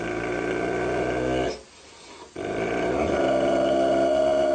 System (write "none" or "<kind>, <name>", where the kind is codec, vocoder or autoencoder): none